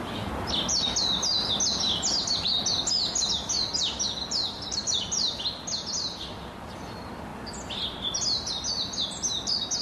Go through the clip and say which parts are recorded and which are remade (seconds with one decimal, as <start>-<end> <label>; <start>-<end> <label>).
0.0-9.8 recorded

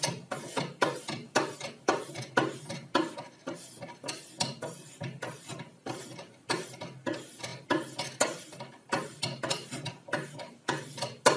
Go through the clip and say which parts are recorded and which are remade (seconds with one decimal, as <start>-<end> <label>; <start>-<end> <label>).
0.0-11.4 recorded

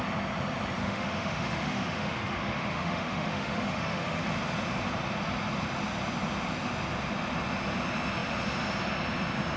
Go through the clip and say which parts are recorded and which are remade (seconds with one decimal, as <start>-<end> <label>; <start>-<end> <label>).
0.0-0.8 recorded; 0.8-4.2 remade; 4.2-9.6 recorded

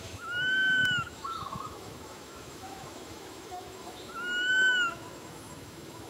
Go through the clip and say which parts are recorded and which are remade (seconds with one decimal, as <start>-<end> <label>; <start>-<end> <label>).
0.0-6.1 remade

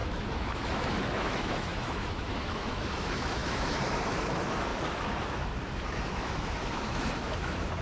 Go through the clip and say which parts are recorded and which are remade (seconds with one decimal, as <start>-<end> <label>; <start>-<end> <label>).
0.0-7.8 remade

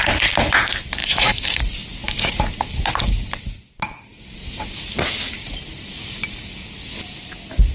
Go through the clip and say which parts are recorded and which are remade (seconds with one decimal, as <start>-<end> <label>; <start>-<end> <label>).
0.0-1.0 recorded; 1.0-1.6 remade; 1.6-7.7 recorded